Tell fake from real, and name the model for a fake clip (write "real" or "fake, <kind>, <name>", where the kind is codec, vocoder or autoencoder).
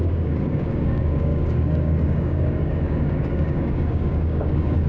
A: fake, codec, DAC